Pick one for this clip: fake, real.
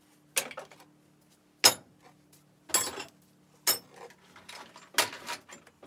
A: real